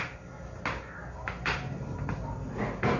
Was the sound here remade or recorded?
recorded